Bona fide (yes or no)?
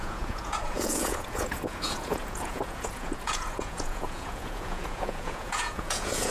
no